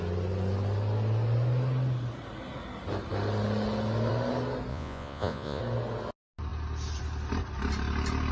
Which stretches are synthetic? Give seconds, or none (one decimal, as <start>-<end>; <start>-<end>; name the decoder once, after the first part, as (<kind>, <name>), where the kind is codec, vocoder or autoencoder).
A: 4.7-5.6 (vocoder, Vocos)